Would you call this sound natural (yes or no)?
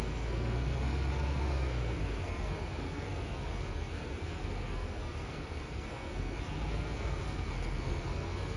no